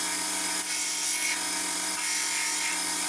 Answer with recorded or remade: recorded